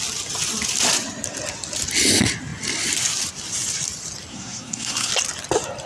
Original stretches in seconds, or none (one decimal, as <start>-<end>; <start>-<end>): 0.0-4.3; 5.1-5.9